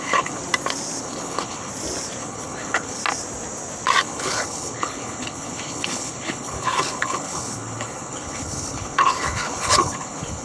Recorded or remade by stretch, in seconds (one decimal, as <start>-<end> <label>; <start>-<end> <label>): 0.0-0.4 remade; 0.4-1.0 recorded; 1.0-1.7 remade; 1.7-2.2 recorded; 2.2-3.0 remade; 3.0-4.0 recorded; 4.0-10.4 remade